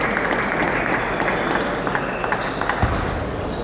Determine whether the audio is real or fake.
real